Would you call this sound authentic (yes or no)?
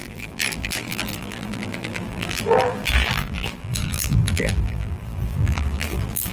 no